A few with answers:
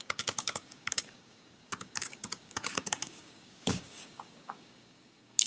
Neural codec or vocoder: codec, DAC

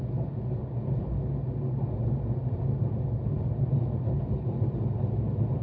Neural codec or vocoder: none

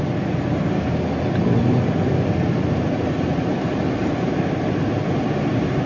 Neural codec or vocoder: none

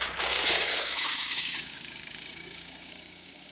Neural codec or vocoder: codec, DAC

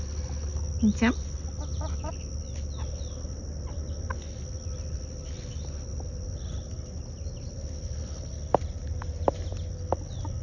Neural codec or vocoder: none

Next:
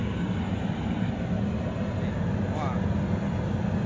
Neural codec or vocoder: none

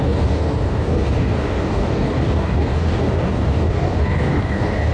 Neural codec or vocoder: codec, DAC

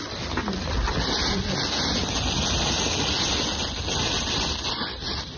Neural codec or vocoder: none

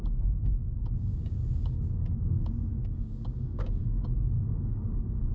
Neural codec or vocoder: codec, DAC